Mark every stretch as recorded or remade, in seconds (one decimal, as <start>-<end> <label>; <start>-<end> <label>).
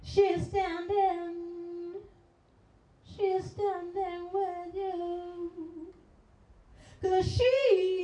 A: 0.0-6.7 recorded; 6.7-8.0 remade